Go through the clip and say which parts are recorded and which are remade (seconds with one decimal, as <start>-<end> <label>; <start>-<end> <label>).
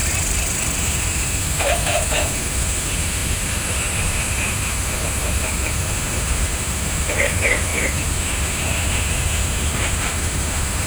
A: 0.0-0.8 recorded; 0.8-10.9 remade